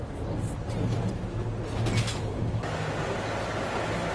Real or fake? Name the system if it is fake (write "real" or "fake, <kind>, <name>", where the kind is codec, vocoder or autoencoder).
real